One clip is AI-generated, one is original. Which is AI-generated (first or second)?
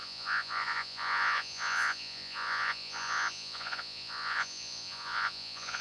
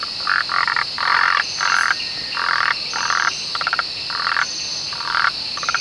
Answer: first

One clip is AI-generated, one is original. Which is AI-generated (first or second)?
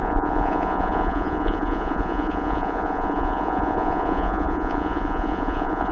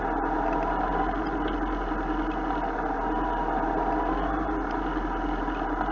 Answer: first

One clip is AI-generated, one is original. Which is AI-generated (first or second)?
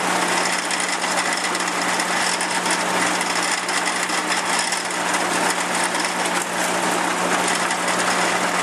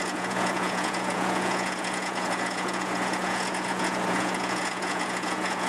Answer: second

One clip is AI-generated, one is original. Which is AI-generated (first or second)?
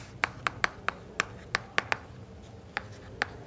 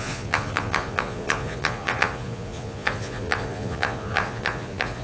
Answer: second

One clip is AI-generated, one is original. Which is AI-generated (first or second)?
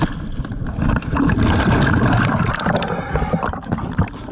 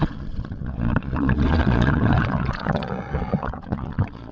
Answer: second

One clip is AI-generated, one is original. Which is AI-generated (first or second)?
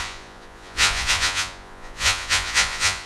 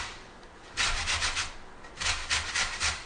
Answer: first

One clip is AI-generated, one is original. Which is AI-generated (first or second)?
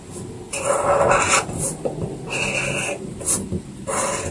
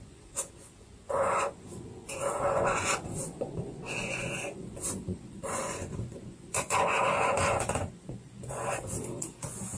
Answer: second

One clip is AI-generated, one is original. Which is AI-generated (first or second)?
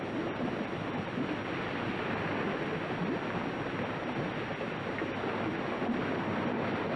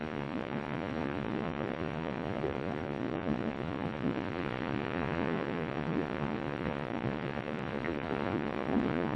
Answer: second